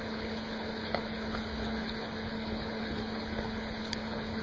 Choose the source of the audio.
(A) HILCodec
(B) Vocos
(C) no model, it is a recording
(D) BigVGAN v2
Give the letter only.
A